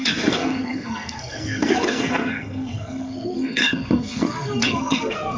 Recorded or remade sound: remade